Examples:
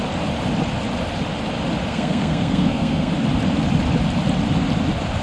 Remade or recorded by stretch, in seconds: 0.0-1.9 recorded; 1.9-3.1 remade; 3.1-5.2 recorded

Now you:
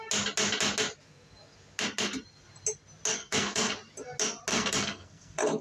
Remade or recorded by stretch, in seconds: 0.0-3.1 recorded; 3.1-3.7 remade; 3.7-4.5 recorded; 4.5-5.6 remade